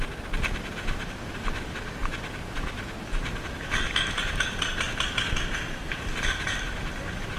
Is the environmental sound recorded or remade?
recorded